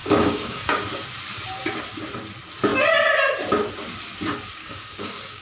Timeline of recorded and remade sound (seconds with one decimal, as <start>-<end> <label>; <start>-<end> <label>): 0.0-0.8 remade; 0.8-4.6 recorded; 4.6-5.4 remade